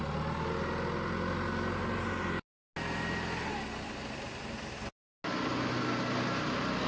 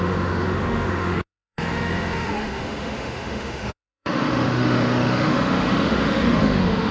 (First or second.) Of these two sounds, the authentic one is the first